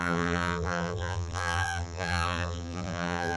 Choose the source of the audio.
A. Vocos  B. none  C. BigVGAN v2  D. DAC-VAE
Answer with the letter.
C